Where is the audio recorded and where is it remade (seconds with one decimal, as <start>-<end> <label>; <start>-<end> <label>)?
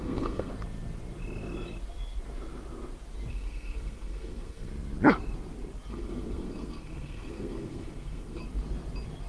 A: 0.0-0.5 remade; 0.5-3.3 recorded; 3.3-4.7 remade; 4.7-5.9 recorded; 5.9-8.4 remade; 8.4-9.3 recorded